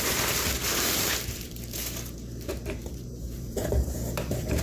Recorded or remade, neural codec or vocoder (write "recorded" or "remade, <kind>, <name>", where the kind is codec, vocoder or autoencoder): remade, vocoder, BigVGAN v2